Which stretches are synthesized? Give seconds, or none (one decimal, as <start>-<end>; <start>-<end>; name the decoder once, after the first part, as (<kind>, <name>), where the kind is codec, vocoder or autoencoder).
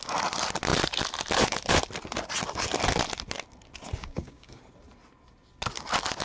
4.0-4.6 (codec, DAC)